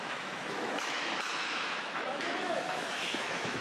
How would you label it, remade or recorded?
remade